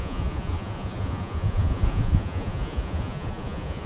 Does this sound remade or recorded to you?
remade